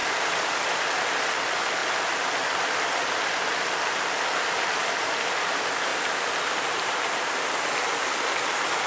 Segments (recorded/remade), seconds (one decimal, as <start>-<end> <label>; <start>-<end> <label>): 0.0-8.9 recorded